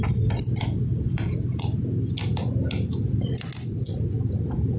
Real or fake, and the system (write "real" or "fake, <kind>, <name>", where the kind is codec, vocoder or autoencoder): real